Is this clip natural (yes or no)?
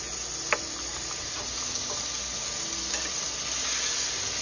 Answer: yes